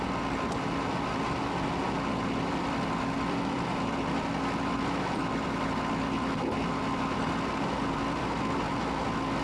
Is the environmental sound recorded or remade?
recorded